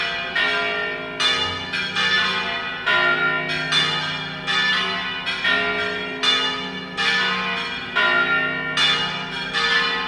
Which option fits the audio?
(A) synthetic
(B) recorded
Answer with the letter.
B